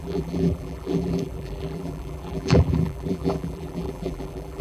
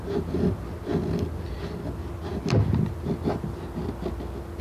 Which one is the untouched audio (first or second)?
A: second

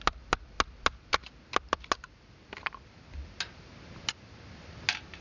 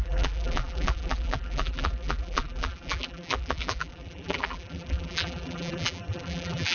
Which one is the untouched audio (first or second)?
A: first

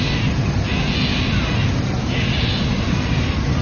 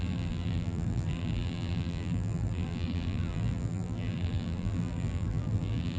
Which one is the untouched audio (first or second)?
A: first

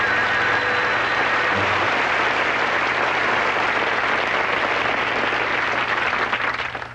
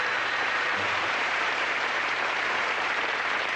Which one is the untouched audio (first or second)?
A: first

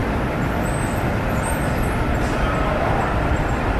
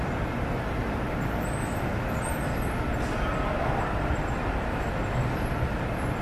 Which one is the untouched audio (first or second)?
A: second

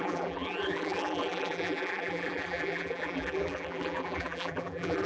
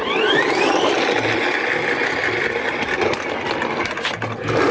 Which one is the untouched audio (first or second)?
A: second